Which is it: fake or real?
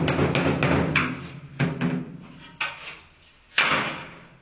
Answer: real